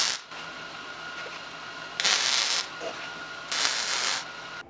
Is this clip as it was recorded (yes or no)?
yes